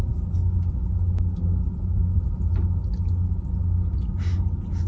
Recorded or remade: recorded